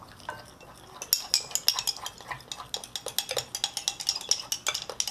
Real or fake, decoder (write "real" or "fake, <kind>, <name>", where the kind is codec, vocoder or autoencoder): real